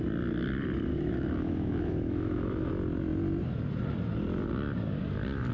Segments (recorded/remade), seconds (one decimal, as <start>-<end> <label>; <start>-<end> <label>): 0.0-0.9 recorded; 0.9-2.7 remade; 2.7-5.5 recorded